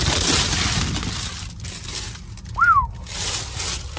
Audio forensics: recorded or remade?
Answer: recorded